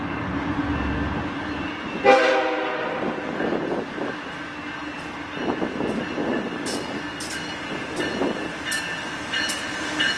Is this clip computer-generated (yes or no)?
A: no